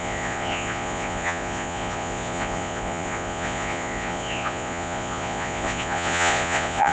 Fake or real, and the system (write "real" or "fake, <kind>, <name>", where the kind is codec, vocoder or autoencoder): fake, vocoder, Vocos